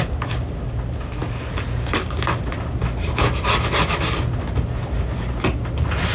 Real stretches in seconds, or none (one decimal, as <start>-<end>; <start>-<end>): 0.0-6.1